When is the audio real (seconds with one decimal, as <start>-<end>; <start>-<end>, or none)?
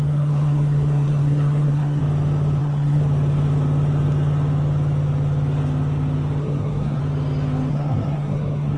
2.0-2.6; 3.0-6.4; 7.0-7.7